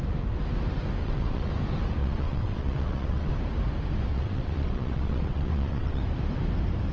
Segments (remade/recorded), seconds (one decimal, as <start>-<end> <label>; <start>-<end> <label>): 0.0-1.0 recorded; 1.0-1.5 remade; 1.5-2.0 recorded; 2.0-3.3 remade; 3.3-4.1 recorded; 4.1-6.0 remade; 6.0-6.9 recorded